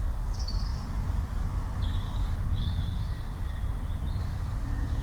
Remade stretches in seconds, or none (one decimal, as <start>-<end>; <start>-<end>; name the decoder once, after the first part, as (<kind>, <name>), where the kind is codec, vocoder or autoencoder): 0.0-3.6 (codec, DAC); 4.2-5.0